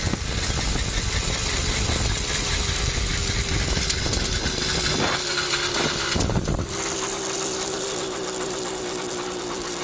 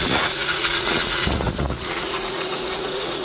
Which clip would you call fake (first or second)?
second